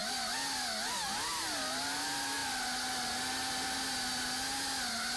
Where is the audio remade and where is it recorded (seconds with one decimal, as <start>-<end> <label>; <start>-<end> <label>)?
0.0-5.2 recorded